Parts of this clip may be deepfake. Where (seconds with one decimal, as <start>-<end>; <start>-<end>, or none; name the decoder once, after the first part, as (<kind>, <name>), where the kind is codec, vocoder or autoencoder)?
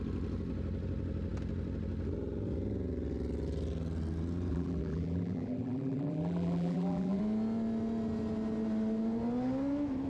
4.5-7.2 (vocoder, BigVGAN v2)